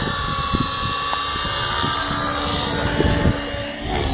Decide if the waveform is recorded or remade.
recorded